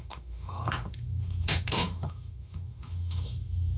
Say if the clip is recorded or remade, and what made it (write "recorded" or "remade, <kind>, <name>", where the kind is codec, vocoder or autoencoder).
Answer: remade, autoencoder, DAC-VAE